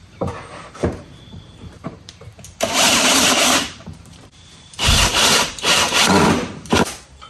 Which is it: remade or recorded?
remade